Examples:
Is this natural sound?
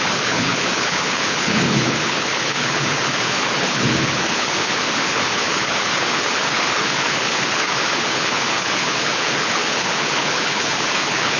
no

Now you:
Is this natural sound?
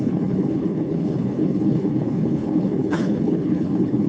no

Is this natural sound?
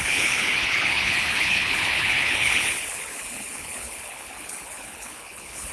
no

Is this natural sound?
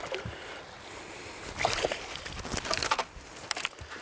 yes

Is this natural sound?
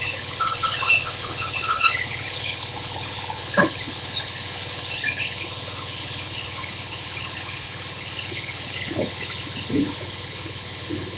no